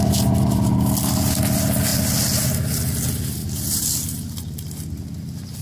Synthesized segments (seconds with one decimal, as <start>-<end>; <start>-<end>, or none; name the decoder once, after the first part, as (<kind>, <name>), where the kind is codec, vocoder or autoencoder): none